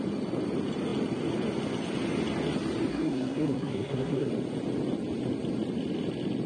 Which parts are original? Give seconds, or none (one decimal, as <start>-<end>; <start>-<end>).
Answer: 0.0-2.9; 4.3-6.5